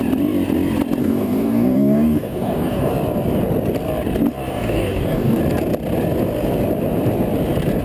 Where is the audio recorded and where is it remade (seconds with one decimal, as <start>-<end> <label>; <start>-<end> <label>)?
0.0-1.0 recorded; 1.0-2.9 remade; 2.9-4.5 recorded; 4.5-5.4 remade; 5.4-7.8 recorded